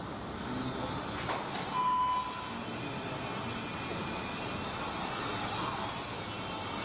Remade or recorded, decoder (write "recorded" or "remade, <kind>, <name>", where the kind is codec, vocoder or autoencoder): recorded